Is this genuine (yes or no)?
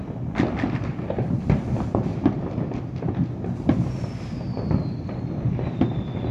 yes